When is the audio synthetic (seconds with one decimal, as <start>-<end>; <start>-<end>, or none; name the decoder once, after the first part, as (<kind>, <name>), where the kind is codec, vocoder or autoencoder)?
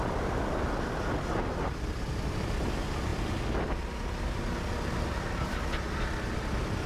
none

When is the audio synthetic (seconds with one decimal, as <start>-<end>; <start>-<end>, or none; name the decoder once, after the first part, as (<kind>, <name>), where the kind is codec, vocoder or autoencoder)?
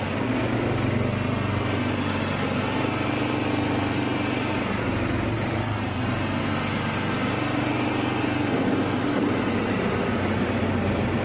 none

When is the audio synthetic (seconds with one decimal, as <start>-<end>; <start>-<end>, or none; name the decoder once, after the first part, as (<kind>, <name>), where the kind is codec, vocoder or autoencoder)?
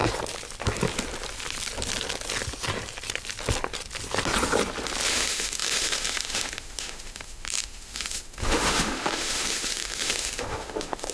5.1-11.1 (autoencoder, DAC-VAE)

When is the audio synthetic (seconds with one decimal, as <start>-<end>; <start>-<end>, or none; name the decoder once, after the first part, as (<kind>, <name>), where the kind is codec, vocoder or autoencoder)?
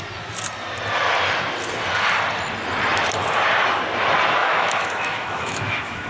4.4-6.1 (autoencoder, DAC-VAE)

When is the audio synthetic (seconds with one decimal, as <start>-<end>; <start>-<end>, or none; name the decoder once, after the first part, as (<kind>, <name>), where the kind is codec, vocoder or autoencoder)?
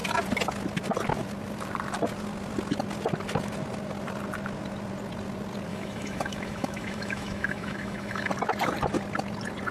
5.7-8.3 (autoencoder, DAC-VAE)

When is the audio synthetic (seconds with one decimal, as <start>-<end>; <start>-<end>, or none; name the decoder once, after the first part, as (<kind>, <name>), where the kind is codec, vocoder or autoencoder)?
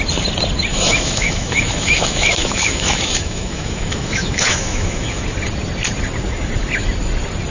0.7-5.2 (autoencoder, DAC-VAE)